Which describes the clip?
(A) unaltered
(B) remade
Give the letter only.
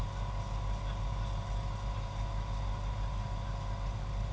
A